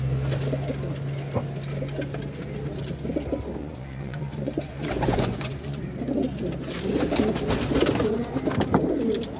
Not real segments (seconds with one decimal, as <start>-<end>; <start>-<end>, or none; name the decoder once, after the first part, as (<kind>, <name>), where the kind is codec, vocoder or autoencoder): 3.6-5.8 (vocoder, Vocos)